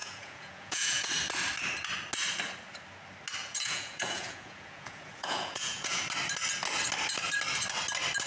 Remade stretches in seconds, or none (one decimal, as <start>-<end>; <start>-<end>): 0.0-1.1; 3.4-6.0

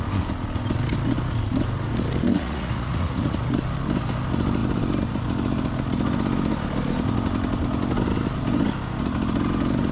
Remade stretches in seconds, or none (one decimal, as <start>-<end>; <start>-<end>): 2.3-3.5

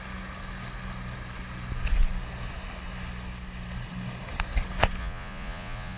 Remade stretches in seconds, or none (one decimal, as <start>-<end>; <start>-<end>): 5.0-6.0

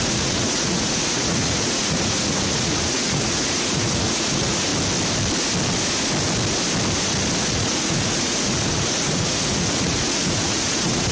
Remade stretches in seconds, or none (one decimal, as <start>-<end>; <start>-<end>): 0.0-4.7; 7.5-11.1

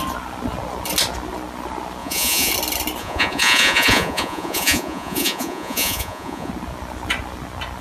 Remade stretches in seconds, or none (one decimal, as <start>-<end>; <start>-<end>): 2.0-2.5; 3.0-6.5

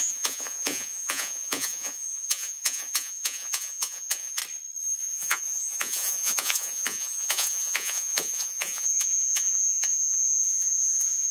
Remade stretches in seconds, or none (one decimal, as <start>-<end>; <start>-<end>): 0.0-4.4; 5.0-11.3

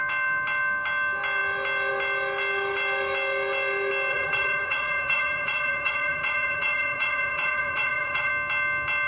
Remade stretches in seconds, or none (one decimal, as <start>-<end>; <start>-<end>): 4.1-8.3

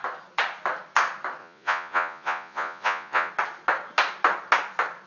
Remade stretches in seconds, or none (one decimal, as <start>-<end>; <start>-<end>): 1.4-3.3